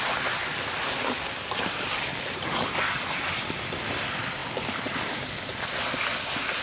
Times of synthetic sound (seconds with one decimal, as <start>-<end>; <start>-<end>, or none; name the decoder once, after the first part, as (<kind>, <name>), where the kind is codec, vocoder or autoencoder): none